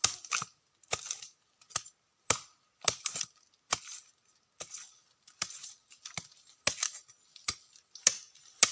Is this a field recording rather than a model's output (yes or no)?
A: yes